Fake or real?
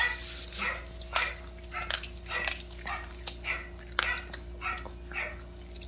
real